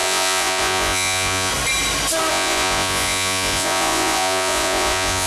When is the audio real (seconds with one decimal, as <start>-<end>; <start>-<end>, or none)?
1.5-2.3